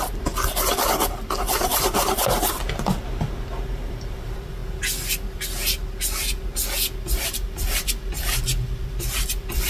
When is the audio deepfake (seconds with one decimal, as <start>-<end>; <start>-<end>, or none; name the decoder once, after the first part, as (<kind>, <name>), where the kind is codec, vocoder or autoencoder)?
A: 0.0-4.6 (vocoder, BigVGAN v2); 7.2-9.7